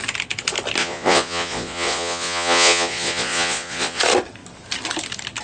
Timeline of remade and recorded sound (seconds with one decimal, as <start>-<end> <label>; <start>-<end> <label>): 0.0-0.8 recorded; 0.8-4.0 remade; 4.0-5.4 recorded